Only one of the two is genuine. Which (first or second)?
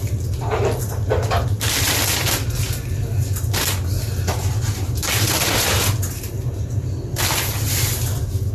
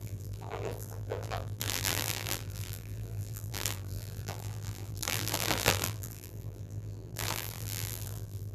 first